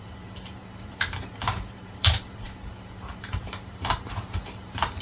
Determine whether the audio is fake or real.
fake